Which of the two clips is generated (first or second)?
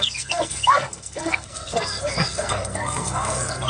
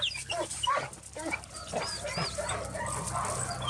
first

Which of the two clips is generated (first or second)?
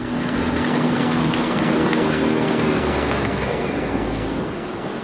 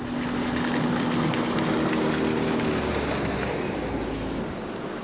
first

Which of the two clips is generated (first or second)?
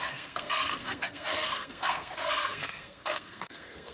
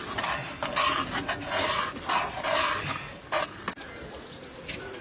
first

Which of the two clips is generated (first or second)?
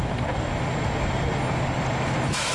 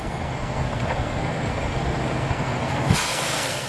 second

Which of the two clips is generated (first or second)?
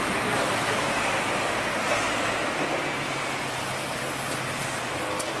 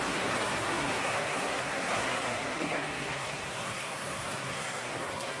second